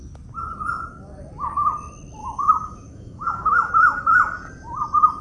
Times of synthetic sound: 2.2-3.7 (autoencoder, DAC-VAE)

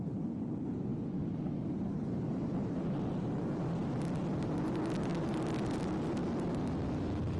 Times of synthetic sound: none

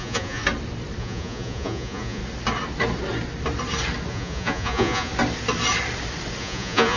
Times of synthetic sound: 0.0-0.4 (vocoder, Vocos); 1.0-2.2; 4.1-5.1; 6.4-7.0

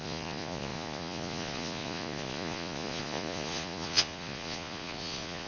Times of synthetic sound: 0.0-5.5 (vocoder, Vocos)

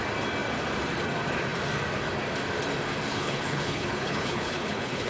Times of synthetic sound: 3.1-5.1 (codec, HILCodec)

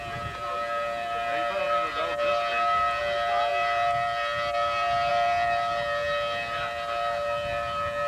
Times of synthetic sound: none

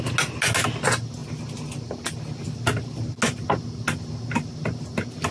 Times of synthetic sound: none

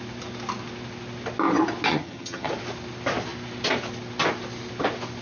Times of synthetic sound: 1.9-2.5 (vocoder, HiFi-GAN)